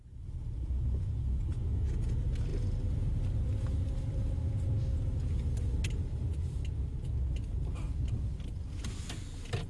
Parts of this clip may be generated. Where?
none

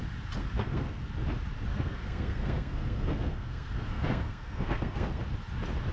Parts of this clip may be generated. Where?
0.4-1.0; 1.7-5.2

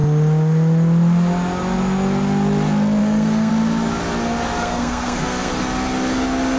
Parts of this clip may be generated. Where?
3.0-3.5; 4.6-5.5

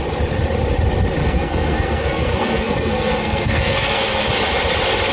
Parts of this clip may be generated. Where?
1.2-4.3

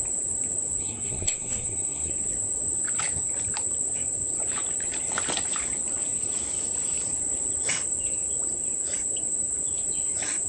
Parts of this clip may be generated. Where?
0.8-2.1